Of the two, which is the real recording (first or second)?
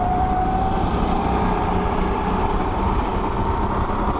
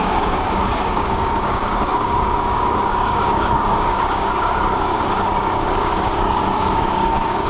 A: first